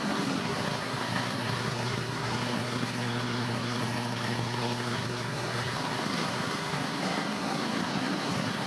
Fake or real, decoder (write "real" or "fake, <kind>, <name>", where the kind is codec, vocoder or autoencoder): fake, codec, SNAC